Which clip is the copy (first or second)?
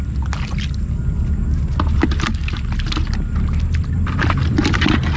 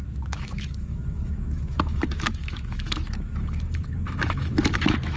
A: second